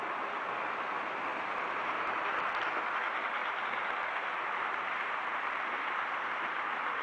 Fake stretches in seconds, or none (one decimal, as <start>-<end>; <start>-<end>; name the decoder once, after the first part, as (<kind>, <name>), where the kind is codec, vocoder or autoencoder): none